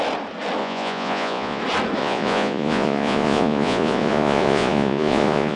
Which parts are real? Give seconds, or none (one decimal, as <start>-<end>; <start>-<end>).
0.0-0.6; 1.6-2.0

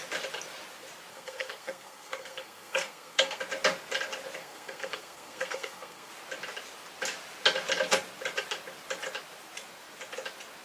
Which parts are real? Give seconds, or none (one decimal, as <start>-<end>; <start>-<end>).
0.0-1.1; 3.4-4.4; 6.1-10.6

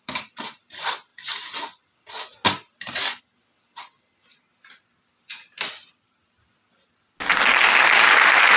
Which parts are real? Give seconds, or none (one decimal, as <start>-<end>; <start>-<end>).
0.0-8.6

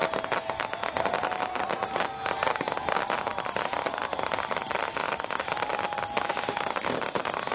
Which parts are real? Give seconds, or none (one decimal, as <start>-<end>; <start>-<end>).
0.0-3.3; 5.7-7.5

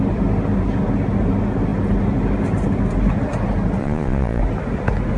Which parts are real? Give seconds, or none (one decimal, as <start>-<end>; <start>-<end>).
0.0-3.8; 4.4-5.2

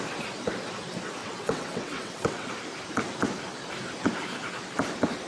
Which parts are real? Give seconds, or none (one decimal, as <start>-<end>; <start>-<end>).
0.0-1.2; 2.5-5.3